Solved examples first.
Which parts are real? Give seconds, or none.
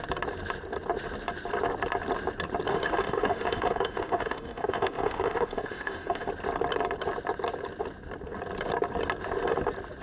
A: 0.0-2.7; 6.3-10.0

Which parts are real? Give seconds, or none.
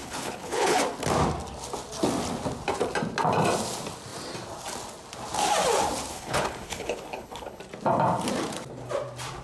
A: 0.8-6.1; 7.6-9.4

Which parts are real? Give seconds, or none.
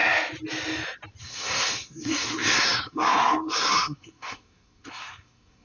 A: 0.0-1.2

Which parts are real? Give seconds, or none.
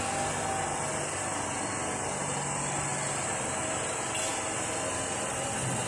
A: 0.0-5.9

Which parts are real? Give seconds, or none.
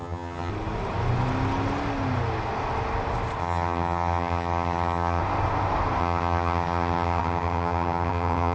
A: 0.5-3.4; 5.2-6.0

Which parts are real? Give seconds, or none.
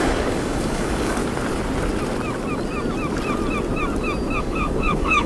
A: 1.2-4.4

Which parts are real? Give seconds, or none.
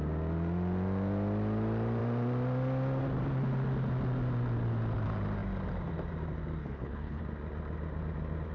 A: 0.0-6.6; 7.2-8.5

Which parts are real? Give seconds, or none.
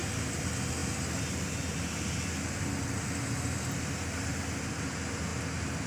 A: 0.0-5.9